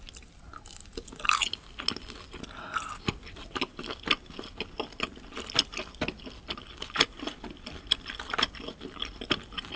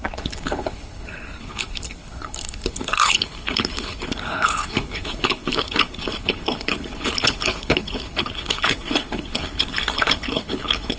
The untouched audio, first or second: first